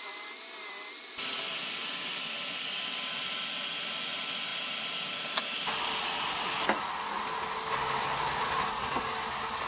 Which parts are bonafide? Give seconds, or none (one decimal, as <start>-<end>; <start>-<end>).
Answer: 0.0-9.7